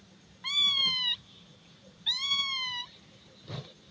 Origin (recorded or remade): remade